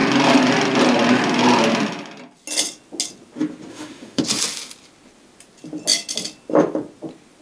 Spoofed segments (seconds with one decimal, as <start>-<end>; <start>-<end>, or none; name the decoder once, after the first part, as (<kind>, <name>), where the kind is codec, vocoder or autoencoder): 3.7-4.2 (autoencoder, DAC-VAE)